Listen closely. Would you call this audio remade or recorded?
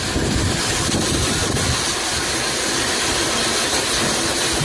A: remade